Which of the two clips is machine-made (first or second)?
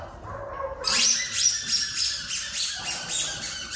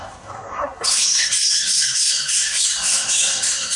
second